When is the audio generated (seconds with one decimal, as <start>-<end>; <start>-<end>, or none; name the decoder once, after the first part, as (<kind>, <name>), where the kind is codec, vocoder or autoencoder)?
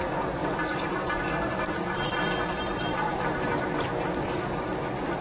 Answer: 0.4-1.1 (vocoder, BigVGAN v2); 2.7-4.5